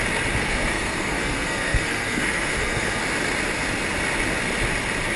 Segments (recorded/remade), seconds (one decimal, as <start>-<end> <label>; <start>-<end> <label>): 0.0-0.4 recorded; 0.4-3.0 remade; 3.0-5.2 recorded